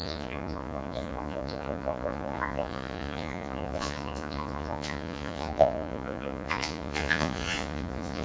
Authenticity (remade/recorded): remade